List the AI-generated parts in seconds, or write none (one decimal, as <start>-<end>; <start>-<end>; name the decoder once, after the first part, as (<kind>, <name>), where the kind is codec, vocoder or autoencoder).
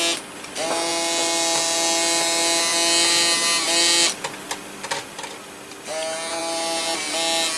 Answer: none